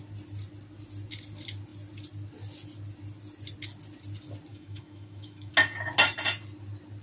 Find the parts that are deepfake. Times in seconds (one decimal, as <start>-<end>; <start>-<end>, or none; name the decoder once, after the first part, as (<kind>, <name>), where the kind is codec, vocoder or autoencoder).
4.5-5.5 (autoencoder, DAC-VAE)